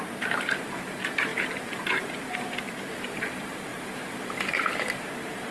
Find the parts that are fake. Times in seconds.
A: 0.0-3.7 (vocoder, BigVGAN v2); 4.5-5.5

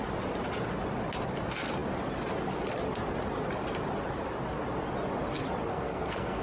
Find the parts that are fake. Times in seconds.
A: 5.7-6.4 (codec, SNAC)

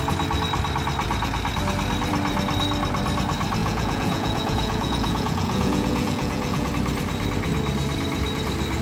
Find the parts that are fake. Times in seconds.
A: 3.6-6.7 (vocoder, Vocos)

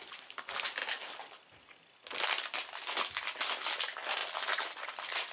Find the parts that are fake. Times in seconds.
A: 0.0-0.8 (vocoder, BigVGAN v2); 2.4-5.3

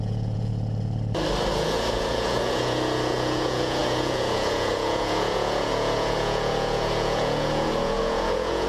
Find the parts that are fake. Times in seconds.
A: 0.0-0.5 (vocoder, Vocos); 1.5-8.7